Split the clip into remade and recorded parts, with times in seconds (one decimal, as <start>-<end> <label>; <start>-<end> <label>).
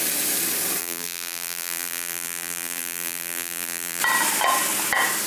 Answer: 0.0-0.8 recorded; 0.8-4.0 remade; 4.0-5.3 recorded